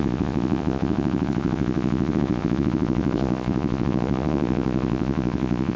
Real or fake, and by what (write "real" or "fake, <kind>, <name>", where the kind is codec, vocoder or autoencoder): fake, vocoder, Vocos